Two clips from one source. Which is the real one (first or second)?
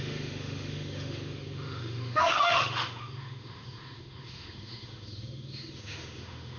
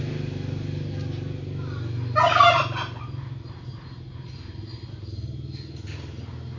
second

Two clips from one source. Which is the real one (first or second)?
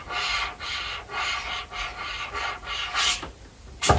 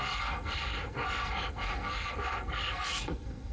first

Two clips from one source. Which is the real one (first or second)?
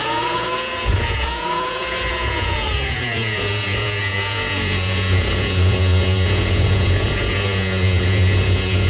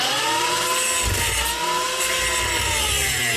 second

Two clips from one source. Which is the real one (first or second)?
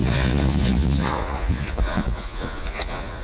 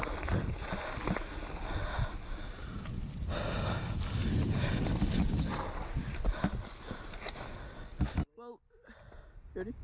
second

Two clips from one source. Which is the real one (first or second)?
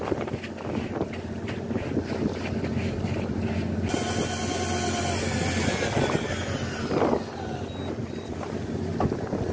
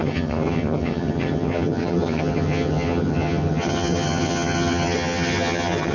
first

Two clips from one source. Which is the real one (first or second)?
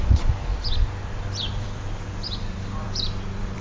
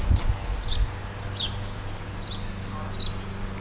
second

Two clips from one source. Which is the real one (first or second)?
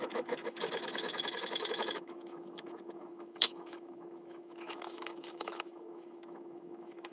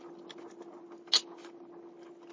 second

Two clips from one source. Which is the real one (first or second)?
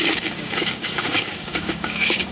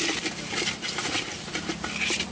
second